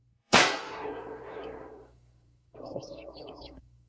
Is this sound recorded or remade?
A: remade